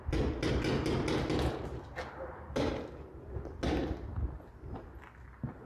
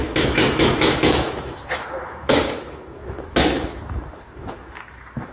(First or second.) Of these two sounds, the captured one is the first